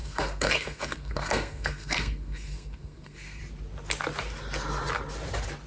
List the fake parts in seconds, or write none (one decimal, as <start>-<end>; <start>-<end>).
0.0-3.4